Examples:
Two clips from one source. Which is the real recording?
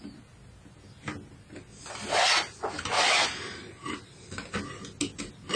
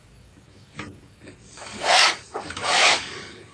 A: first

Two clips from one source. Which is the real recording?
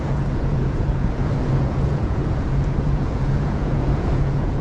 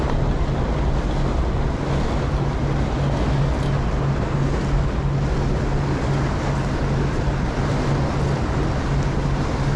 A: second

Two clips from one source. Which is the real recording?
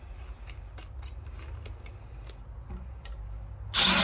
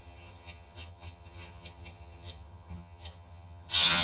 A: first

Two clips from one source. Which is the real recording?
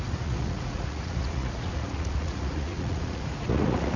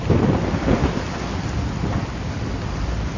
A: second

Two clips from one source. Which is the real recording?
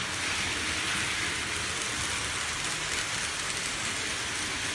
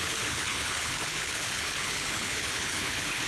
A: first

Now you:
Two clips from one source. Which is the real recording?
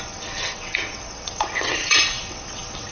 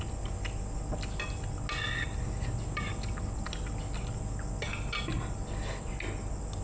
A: second